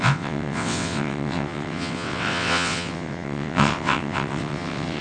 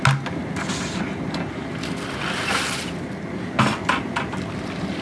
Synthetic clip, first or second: first